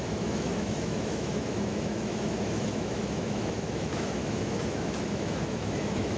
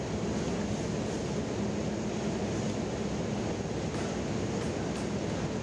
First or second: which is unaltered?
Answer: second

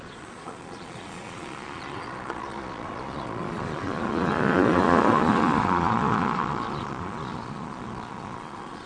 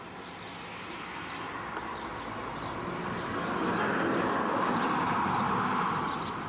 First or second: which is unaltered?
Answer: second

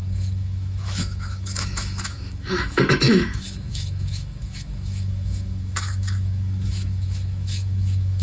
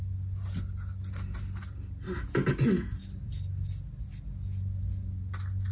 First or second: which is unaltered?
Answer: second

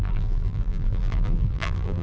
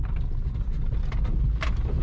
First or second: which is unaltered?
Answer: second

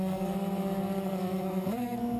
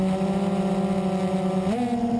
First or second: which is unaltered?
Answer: second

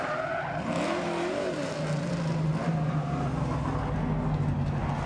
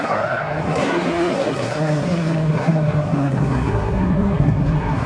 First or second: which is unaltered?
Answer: first